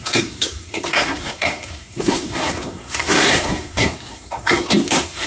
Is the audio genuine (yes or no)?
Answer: no